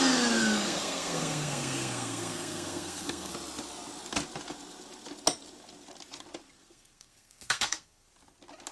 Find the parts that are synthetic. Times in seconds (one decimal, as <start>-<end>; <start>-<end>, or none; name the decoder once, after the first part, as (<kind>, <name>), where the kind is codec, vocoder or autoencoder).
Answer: 0.4-3.3 (codec, SNAC); 6.6-8.1